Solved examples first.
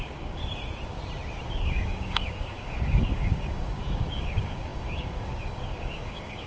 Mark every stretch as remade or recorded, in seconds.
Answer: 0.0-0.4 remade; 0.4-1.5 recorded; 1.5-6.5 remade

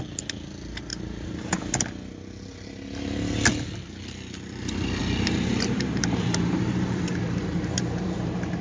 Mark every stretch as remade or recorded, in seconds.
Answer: 0.0-0.9 recorded; 0.9-1.6 remade; 1.6-5.0 recorded; 5.0-8.6 remade

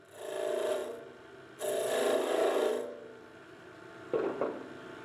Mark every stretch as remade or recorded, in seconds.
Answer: 0.0-5.0 recorded